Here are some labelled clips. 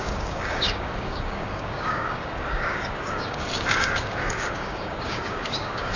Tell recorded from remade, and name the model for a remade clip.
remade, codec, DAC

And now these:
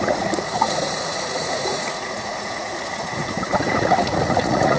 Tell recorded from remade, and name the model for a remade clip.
remade, vocoder, Vocos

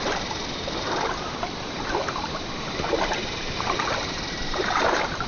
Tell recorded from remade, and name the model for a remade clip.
remade, vocoder, BigVGAN v2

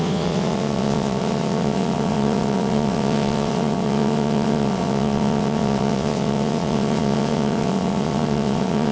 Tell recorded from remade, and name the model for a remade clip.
remade, vocoder, WaveNeXt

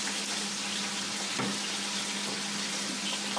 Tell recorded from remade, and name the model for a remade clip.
recorded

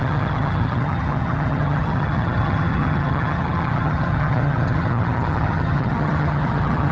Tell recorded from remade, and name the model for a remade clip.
remade, vocoder, HiFi-GAN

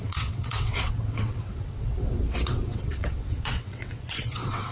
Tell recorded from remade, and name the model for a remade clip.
remade, vocoder, WaveNeXt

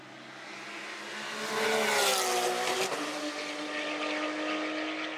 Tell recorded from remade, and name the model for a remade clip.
recorded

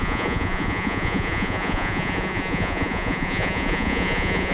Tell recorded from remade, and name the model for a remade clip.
remade, vocoder, Vocos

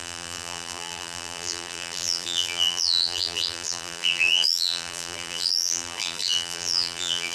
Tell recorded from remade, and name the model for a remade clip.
remade, vocoder, BigVGAN v2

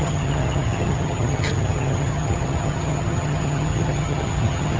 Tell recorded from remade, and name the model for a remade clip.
remade, vocoder, HiFi-GAN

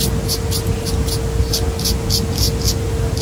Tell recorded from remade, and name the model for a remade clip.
recorded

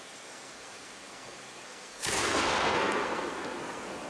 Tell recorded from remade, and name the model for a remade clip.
remade, codec, SNAC